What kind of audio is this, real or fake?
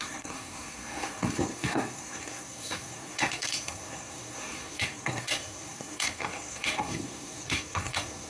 fake